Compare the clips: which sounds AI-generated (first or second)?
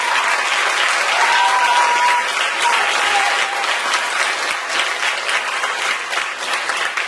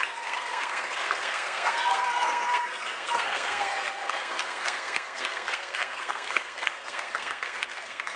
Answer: second